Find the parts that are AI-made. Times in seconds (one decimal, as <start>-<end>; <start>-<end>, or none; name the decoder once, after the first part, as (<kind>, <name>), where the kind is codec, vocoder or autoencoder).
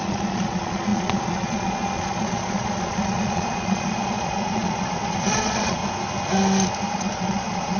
0.0-5.8 (vocoder, Vocos); 6.9-7.8